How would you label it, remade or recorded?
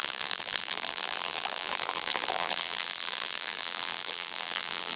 remade